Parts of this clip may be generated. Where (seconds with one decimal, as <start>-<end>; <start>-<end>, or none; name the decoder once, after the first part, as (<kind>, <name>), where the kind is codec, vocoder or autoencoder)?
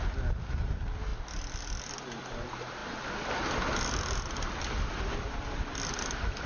none